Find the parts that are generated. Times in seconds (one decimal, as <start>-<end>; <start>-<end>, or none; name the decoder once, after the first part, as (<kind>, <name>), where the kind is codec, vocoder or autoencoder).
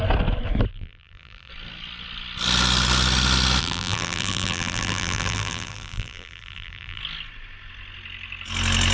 0.7-1.5 (vocoder, BigVGAN v2); 3.6-7.0